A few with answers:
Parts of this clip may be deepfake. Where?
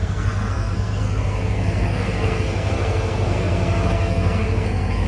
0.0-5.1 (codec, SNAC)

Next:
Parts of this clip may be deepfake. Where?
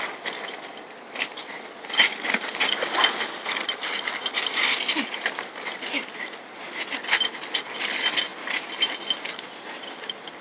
none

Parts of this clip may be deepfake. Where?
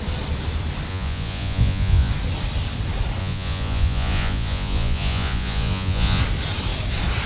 0.9-2.1 (vocoder, Vocos); 3.2-6.2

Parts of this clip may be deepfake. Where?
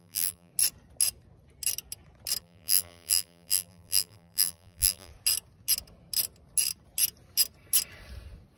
0.0-0.5 (vocoder, BigVGAN v2); 2.4-5.1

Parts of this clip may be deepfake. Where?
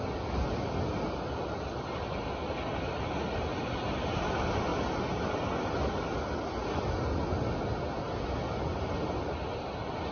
none